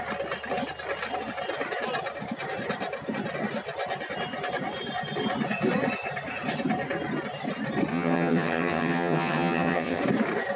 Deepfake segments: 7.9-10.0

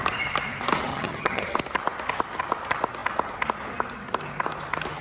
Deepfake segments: 0.9-1.4

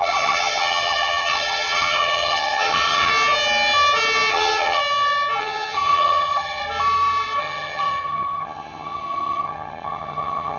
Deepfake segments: 0.0-3.1; 4.3-4.8; 5.4-6.6; 7.4-10.6

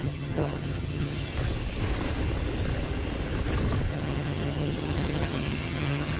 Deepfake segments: 0.0-1.3; 3.9-6.2

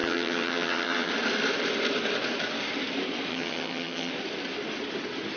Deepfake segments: 0.0-1.1; 3.3-4.1

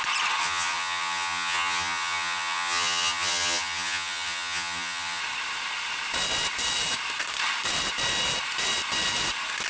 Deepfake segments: 0.4-5.2